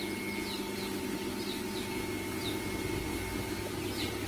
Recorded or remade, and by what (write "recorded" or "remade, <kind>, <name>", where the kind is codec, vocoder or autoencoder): recorded